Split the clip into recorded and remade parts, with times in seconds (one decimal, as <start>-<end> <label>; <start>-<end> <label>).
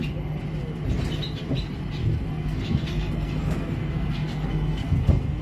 0.0-2.0 recorded; 2.0-5.4 remade